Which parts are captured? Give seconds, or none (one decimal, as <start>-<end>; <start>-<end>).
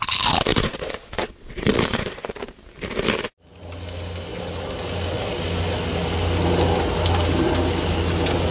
0.0-0.5; 2.2-8.5